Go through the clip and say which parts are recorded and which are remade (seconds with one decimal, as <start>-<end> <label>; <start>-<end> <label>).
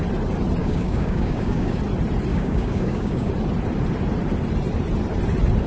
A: 0.0-0.6 recorded; 0.6-1.8 remade; 1.8-2.3 recorded; 2.3-3.3 remade; 3.3-5.7 recorded